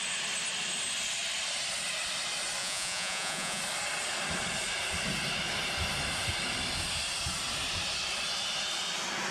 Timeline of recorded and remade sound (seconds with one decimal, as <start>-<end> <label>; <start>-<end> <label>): 0.0-2.6 recorded; 2.6-3.6 remade; 3.6-9.3 recorded